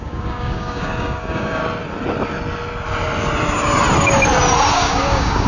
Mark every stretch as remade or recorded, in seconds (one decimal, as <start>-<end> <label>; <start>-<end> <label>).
0.0-1.6 remade; 1.6-4.7 recorded; 4.7-5.5 remade